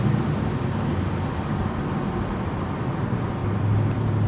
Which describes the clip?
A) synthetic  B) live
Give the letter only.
B